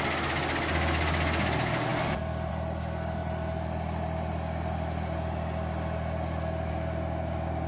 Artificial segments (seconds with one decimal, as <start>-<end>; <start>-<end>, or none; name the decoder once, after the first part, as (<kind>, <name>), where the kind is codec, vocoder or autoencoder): none